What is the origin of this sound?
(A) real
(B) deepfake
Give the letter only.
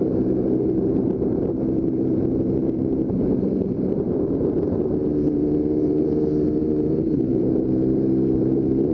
B